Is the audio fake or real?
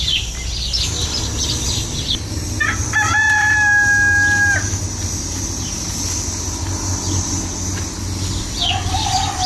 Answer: real